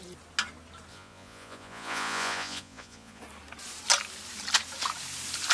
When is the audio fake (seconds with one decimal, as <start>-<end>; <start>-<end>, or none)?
0.9-3.2